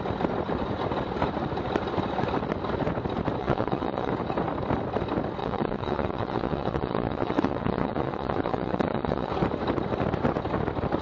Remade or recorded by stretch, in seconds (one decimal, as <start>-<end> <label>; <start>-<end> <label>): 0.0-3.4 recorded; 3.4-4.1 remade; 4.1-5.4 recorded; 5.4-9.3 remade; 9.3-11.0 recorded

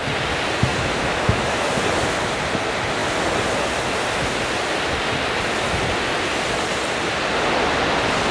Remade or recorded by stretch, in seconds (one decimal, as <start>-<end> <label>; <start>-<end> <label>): 0.0-0.7 recorded; 0.7-1.6 remade; 1.6-8.3 recorded

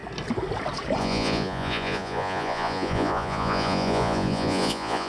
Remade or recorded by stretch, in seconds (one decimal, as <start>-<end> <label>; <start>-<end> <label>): 0.0-1.0 recorded; 1.0-5.1 remade